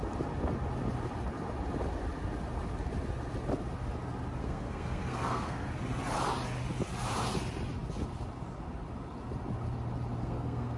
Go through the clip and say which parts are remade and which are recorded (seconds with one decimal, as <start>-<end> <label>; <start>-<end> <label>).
0.0-4.4 recorded; 4.4-5.7 remade; 5.7-10.2 recorded; 10.2-10.8 remade